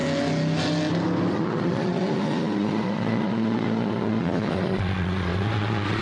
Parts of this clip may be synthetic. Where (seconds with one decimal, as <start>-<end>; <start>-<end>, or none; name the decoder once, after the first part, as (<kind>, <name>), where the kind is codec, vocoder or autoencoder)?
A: 1.3-6.0 (vocoder, Vocos)